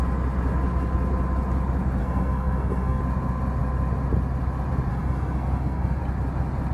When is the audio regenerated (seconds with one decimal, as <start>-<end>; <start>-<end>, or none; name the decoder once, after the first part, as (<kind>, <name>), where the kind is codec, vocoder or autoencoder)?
2.0-3.0 (codec, SNAC); 4.9-6.0